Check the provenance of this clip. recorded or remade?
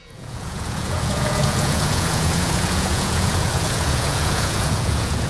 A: remade